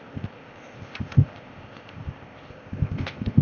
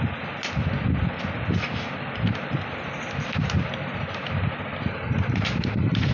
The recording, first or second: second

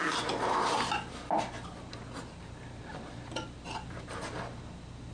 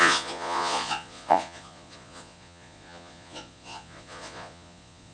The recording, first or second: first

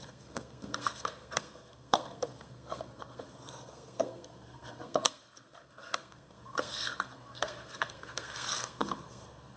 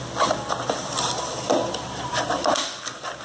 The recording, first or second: second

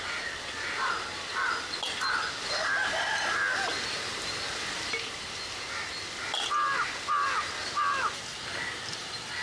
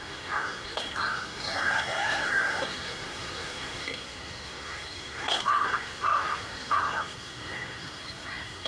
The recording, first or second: first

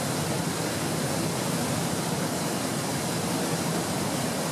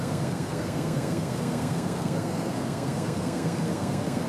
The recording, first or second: first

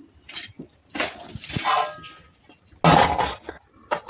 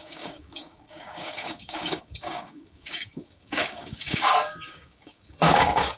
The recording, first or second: first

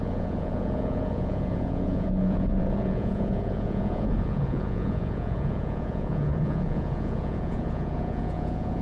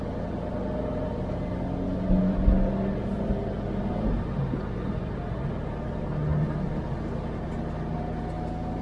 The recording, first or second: second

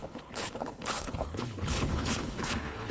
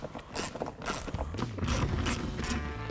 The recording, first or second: second